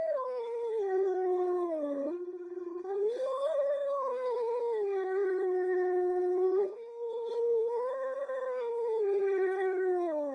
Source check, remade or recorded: remade